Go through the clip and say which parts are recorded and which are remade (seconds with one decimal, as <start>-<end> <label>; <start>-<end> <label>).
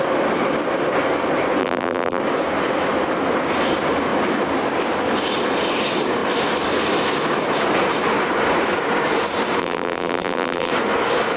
0.0-1.6 recorded; 1.6-2.2 remade; 2.2-9.6 recorded; 9.6-10.7 remade; 10.7-11.4 recorded